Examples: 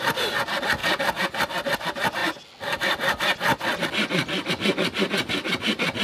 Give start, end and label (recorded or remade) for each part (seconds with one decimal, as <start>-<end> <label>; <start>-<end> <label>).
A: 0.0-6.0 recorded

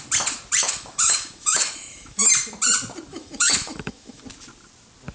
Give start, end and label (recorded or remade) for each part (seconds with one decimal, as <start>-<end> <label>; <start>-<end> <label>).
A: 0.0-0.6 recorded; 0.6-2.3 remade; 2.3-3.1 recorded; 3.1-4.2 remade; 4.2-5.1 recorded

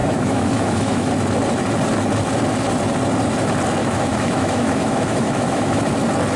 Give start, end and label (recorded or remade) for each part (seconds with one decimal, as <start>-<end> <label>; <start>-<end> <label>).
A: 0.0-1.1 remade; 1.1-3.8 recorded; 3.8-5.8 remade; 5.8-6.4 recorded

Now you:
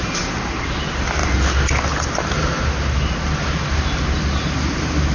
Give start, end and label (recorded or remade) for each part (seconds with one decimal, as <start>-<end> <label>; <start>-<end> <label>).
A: 0.0-5.1 recorded

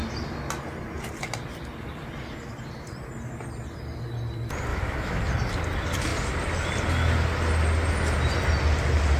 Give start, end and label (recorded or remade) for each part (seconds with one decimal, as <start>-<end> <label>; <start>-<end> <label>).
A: 0.0-4.7 recorded; 4.7-5.2 remade; 5.2-9.2 recorded

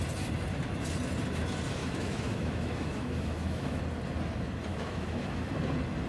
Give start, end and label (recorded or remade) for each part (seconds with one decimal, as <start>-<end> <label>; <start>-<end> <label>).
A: 0.0-1.8 recorded; 1.8-3.8 remade; 3.8-4.7 recorded; 4.7-5.5 remade; 5.5-6.1 recorded

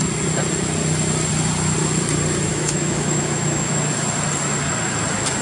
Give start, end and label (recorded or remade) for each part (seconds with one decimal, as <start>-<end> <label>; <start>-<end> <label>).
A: 0.0-2.5 recorded; 2.5-3.7 remade; 3.7-5.4 recorded